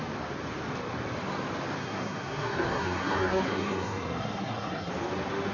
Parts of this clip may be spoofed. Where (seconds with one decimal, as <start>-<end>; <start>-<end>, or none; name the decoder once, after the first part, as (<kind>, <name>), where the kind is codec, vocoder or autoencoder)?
1.8-4.9 (codec, SNAC)